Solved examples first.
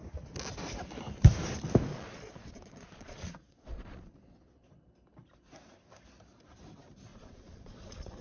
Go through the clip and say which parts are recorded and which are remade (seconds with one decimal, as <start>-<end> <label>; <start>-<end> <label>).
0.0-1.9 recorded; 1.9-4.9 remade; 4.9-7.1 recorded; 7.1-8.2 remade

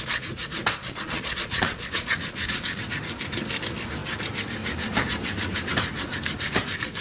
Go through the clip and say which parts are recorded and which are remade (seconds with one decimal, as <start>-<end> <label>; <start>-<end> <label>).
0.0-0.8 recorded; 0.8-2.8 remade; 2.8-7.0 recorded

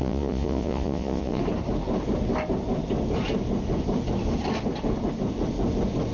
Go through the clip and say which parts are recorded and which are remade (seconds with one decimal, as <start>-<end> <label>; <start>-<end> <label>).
0.0-1.4 remade; 1.4-6.1 recorded

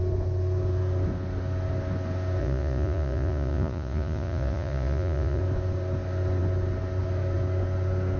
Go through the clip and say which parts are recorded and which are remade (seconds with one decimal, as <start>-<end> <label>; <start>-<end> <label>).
0.0-2.4 recorded; 2.4-5.4 remade; 5.4-8.2 recorded